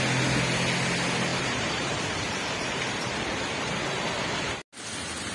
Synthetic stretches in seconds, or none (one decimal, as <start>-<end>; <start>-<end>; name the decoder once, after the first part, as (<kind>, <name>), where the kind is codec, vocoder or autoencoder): 1.3-3.7 (vocoder, BigVGAN v2)